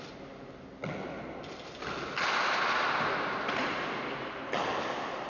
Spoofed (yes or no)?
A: no